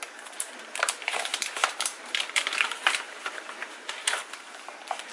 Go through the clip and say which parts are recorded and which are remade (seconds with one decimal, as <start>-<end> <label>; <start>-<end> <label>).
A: 0.0-5.1 remade